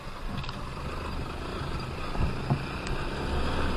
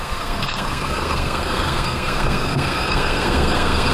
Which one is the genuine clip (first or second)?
first